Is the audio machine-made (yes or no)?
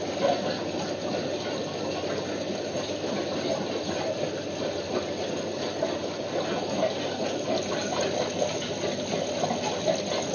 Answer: no